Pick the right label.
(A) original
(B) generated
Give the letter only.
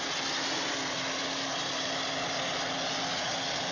A